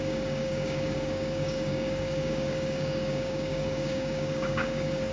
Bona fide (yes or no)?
no